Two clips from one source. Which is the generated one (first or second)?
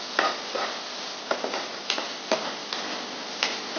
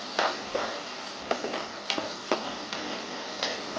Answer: second